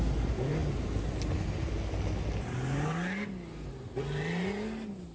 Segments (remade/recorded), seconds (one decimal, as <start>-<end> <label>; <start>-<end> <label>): 0.0-5.1 recorded